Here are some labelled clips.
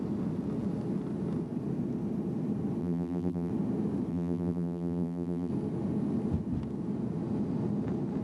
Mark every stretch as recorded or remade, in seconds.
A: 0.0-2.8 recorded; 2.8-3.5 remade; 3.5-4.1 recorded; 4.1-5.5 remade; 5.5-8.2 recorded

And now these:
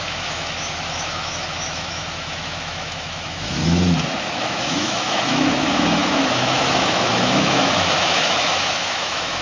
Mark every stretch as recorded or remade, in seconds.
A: 0.0-3.6 remade; 3.6-4.3 recorded; 4.3-9.4 remade

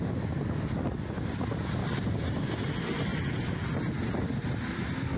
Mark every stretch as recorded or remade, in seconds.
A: 0.0-1.8 recorded; 1.8-2.7 remade; 2.7-5.2 recorded

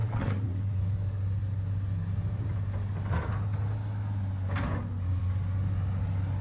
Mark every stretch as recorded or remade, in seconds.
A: 0.0-0.8 remade; 0.8-6.4 recorded

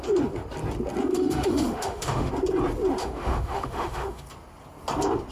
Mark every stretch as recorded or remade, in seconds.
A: 0.0-1.1 recorded; 1.1-2.3 remade; 2.3-3.0 recorded; 3.0-4.2 remade; 4.2-5.3 recorded

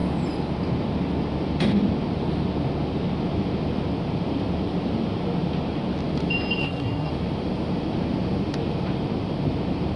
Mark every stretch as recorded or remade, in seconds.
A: 0.0-6.6 recorded; 6.6-7.1 remade; 7.1-10.0 recorded

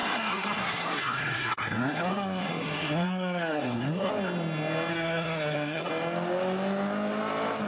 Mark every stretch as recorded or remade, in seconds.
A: 0.0-4.1 remade; 4.1-4.9 recorded; 4.9-5.9 remade; 5.9-7.7 recorded

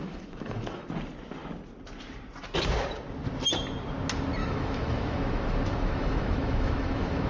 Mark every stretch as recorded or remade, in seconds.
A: 0.0-0.9 remade; 0.9-4.4 recorded; 4.4-7.3 remade